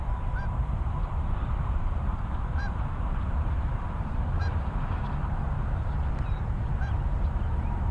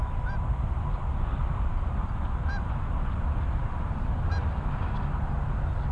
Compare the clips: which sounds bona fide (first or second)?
second